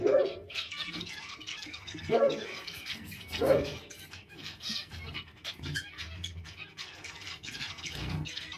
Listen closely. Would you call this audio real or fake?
fake